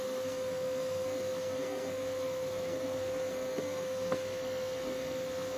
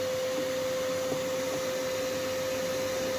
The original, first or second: second